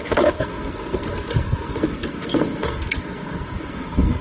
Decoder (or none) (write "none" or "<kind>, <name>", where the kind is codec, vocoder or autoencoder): codec, SNAC